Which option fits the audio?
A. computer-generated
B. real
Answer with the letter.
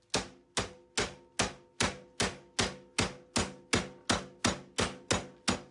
B